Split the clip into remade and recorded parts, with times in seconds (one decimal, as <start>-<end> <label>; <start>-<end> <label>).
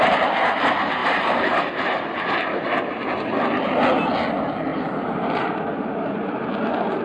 0.0-1.0 recorded; 1.0-2.6 remade; 2.6-4.7 recorded; 4.7-6.5 remade; 6.5-7.0 recorded